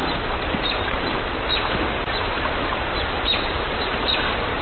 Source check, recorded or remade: remade